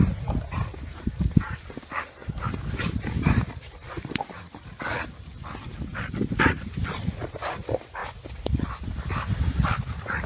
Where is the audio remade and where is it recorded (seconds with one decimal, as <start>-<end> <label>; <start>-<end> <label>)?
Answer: 0.0-10.3 recorded